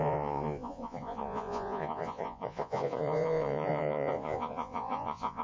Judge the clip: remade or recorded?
remade